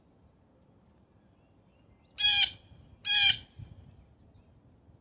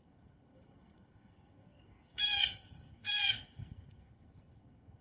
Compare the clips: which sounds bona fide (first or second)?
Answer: first